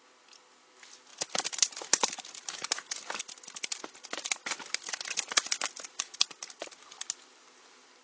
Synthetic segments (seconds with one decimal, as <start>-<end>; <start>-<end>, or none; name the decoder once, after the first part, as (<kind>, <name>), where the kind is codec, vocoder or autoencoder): none

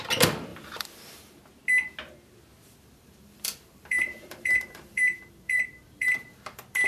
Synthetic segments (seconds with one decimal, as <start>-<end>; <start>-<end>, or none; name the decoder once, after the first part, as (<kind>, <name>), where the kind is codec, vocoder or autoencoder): 0.5-1.4 (vocoder, BigVGAN v2); 2.5-6.9

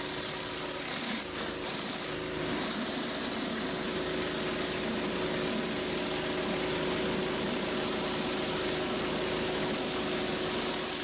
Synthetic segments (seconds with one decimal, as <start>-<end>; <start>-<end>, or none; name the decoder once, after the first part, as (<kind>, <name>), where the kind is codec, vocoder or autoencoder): none

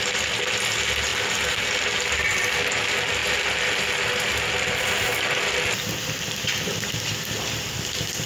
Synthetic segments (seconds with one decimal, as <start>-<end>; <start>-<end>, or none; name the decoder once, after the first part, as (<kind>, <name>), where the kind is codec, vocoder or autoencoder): 1.1-1.8 (vocoder, BigVGAN v2)

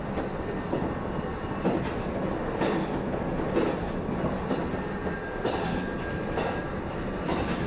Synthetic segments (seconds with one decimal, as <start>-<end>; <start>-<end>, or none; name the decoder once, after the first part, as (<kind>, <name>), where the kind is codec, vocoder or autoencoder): 5.0-7.7 (vocoder, BigVGAN v2)

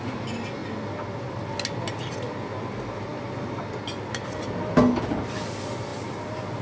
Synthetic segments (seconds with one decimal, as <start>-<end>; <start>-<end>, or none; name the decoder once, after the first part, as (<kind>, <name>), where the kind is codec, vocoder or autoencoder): none